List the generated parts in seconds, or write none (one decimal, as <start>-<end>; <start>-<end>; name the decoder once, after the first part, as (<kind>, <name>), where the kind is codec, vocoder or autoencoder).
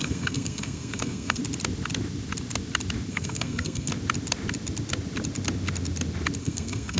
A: 0.0-1.4 (codec, SNAC); 3.1-3.9; 6.4-7.0